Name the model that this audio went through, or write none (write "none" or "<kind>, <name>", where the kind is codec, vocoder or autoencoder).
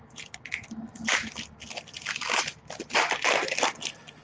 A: none